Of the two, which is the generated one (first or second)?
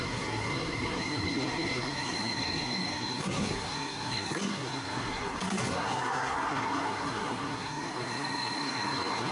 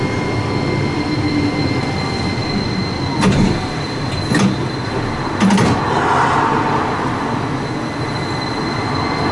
first